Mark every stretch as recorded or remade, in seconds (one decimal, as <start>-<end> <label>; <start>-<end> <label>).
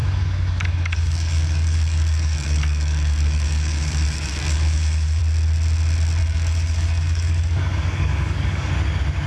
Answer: 0.0-5.2 remade; 5.2-6.2 recorded; 6.2-8.7 remade; 8.7-9.3 recorded